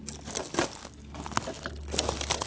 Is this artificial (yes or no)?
no